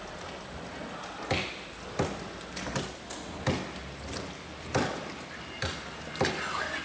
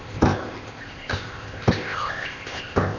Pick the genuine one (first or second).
first